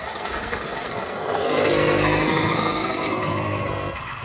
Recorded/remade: remade